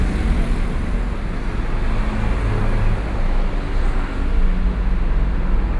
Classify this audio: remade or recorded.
recorded